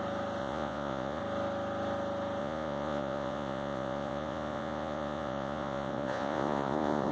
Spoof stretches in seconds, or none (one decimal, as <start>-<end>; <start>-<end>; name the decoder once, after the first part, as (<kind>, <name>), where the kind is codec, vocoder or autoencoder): 0.4-1.2 (vocoder, Vocos); 2.4-7.1